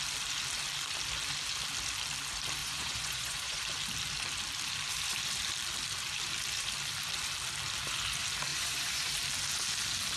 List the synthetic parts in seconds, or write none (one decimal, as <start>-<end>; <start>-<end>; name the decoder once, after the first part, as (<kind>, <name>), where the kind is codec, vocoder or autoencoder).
2.6-3.6 (vocoder, Vocos); 8.5-9.1